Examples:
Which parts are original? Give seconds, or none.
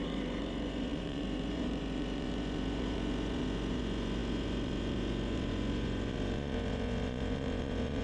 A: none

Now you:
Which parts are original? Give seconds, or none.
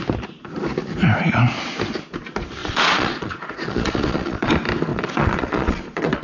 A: 0.0-2.6; 4.5-4.9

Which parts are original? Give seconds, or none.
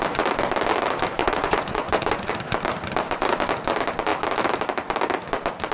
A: 0.0-1.2; 2.3-5.7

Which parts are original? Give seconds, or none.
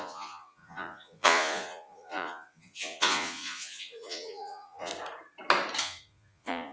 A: 4.9-5.8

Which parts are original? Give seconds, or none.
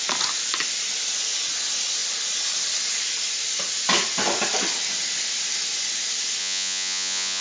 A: 0.0-6.4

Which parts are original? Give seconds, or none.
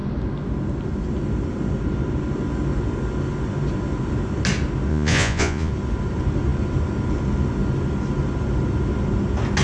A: 0.0-4.9; 5.7-9.6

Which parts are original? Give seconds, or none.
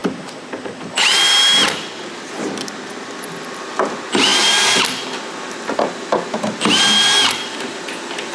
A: 0.0-8.3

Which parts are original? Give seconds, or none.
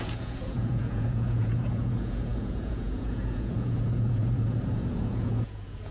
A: none